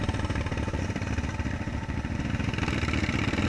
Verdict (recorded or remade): recorded